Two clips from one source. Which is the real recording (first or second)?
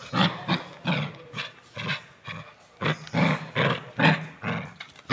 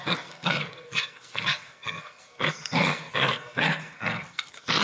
first